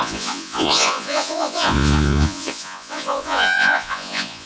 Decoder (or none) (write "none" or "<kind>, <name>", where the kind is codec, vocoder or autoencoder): vocoder, Vocos